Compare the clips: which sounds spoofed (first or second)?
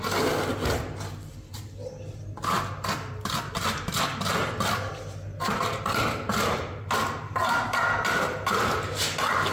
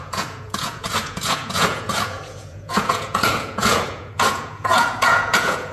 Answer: second